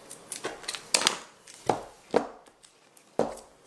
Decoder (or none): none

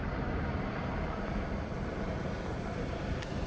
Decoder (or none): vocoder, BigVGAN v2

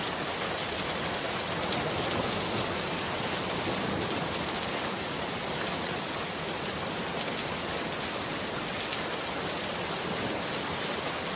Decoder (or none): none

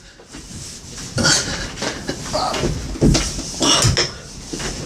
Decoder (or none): none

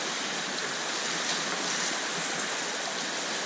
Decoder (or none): none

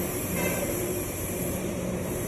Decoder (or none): vocoder, BigVGAN v2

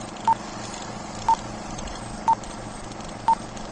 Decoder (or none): none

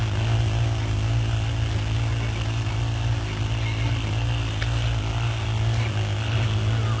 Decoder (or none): none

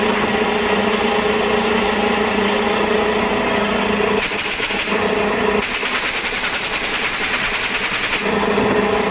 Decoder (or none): none